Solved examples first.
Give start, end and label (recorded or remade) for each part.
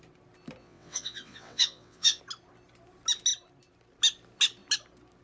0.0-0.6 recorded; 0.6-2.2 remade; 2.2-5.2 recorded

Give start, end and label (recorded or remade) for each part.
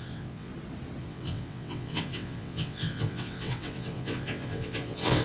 0.0-0.5 remade; 0.5-1.0 recorded; 1.0-5.2 remade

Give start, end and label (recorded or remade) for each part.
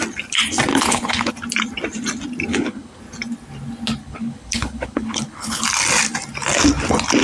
0.0-0.7 recorded; 0.7-1.3 remade; 1.3-2.5 recorded; 2.5-3.0 remade; 3.0-4.0 recorded; 4.0-5.6 remade; 5.6-7.2 recorded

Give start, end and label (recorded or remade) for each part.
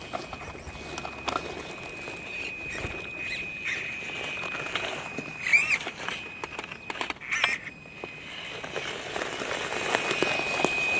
0.0-5.5 recorded; 5.5-6.0 remade; 6.0-11.0 recorded